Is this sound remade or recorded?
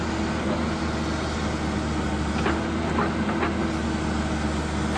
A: recorded